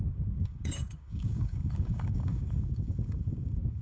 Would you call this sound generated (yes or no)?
yes